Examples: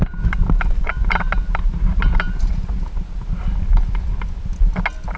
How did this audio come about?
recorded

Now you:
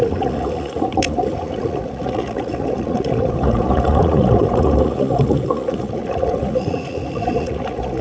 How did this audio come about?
remade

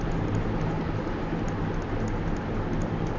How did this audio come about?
recorded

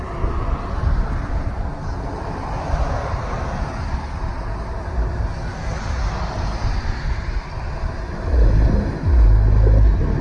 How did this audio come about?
recorded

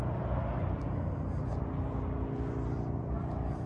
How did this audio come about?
recorded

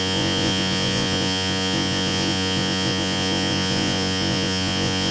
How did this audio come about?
remade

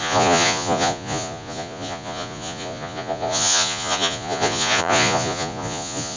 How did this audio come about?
remade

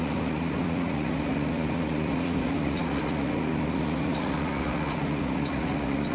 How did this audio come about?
remade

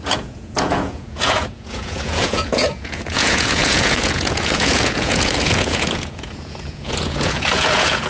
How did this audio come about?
remade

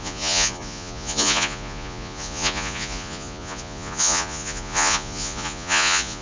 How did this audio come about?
remade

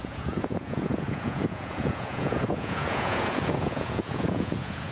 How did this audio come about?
remade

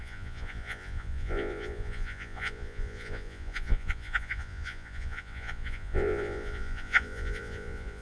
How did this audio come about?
remade